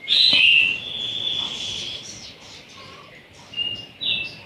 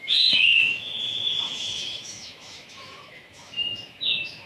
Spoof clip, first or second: second